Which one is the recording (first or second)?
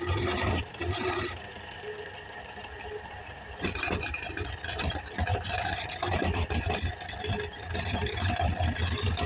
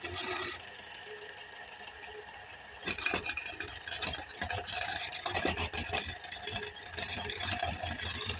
second